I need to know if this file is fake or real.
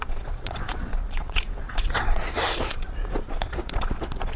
fake